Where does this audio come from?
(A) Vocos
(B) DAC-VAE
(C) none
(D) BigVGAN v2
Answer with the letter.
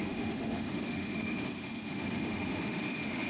B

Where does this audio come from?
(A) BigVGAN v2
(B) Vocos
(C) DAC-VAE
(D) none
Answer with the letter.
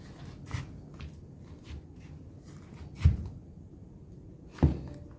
D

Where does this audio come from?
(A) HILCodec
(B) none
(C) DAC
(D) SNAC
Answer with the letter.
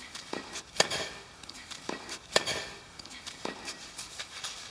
C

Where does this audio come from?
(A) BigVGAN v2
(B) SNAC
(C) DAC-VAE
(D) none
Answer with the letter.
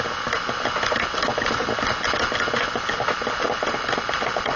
D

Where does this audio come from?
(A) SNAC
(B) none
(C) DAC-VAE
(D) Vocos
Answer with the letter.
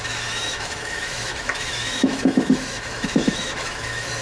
C